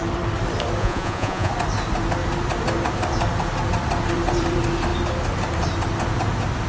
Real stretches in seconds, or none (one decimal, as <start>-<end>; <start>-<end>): 0.0-0.8; 1.5-6.7

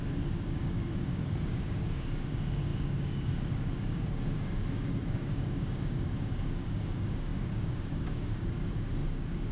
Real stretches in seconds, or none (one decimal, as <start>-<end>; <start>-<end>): none

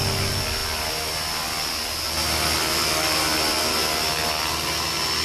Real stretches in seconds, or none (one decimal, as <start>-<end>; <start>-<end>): 0.0-5.2

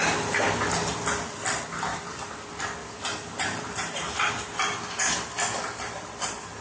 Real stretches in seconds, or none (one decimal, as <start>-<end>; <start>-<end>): 0.0-1.9; 2.4-2.8; 4.3-6.6

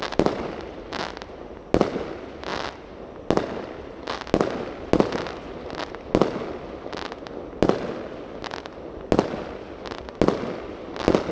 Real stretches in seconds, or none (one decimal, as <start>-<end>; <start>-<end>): 0.0-11.3

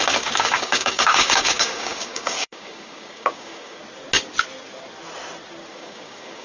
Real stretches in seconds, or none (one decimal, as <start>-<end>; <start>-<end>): 3.8-5.7

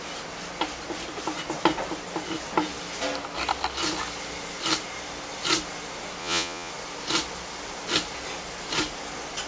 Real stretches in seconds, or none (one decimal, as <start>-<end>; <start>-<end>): 0.0-6.2; 6.7-9.5